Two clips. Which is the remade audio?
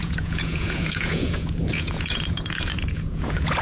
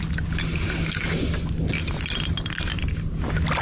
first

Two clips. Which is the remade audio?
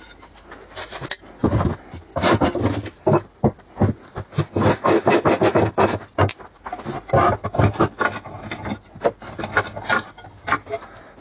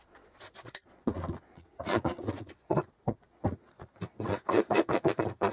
second